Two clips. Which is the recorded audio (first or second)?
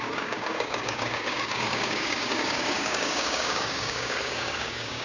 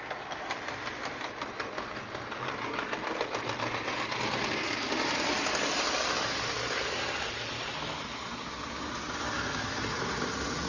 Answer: second